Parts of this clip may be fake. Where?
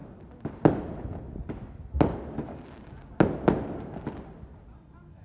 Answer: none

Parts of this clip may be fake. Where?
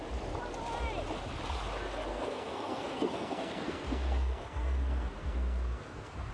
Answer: 2.1-6.3 (codec, SNAC)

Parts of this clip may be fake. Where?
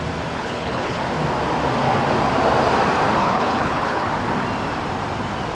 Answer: 0.4-1.0 (codec, HILCodec); 3.2-4.1